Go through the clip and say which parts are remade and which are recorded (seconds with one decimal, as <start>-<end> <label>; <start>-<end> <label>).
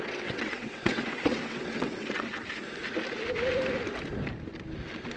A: 0.0-2.4 remade; 2.4-5.2 recorded